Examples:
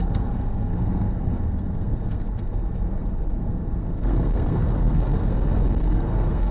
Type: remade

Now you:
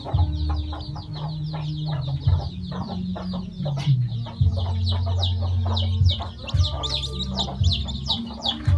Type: recorded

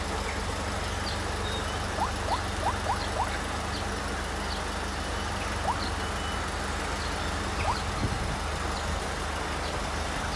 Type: recorded